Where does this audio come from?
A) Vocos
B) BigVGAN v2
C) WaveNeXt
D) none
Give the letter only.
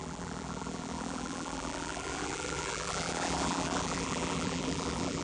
B